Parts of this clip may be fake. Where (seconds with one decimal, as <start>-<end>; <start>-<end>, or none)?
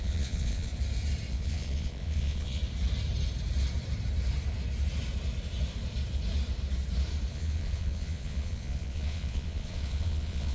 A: 0.0-0.7; 1.3-2.6; 7.3-10.5